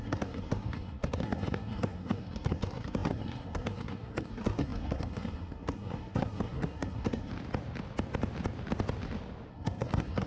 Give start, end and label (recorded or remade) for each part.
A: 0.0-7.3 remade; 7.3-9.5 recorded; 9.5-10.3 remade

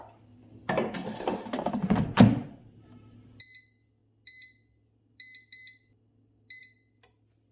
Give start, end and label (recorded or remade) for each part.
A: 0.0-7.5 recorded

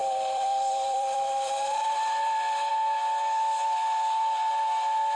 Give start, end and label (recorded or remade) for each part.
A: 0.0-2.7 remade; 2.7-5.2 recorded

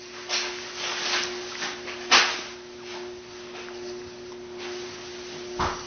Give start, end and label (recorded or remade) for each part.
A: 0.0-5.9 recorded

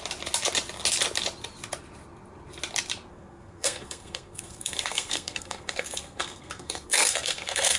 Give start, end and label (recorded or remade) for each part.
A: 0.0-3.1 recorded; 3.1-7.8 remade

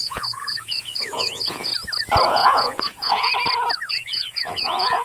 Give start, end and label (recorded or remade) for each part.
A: 0.0-1.7 remade; 1.7-2.3 recorded; 2.3-3.3 remade; 3.3-3.9 recorded; 3.9-5.0 remade

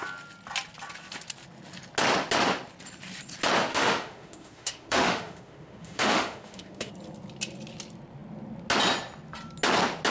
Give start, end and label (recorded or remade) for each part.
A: 0.0-3.7 recorded; 3.7-6.9 remade; 6.9-10.1 recorded

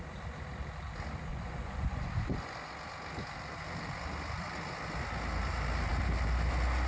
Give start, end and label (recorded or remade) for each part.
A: 0.0-1.3 recorded; 1.3-2.7 remade; 2.7-6.9 recorded